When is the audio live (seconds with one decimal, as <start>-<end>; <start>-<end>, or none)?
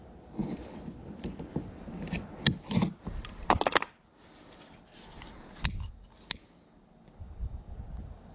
0.0-8.3